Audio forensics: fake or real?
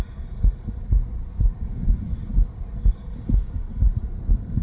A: real